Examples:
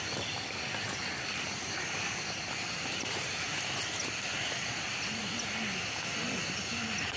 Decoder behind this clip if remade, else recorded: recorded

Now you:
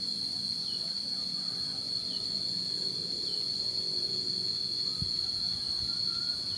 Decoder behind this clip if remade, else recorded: remade, vocoder, Vocos